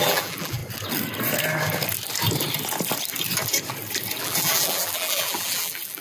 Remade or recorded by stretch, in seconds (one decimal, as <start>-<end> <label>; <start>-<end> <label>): 0.0-0.6 remade; 0.6-4.2 recorded; 4.2-6.0 remade